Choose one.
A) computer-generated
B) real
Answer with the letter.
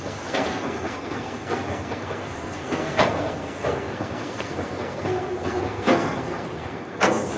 A